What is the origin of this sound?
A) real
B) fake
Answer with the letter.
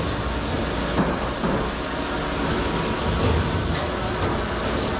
A